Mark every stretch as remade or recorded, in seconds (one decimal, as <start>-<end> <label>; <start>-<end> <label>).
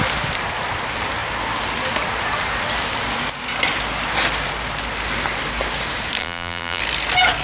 0.0-6.2 recorded; 6.2-6.8 remade; 6.8-7.4 recorded